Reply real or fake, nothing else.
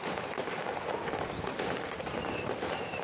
fake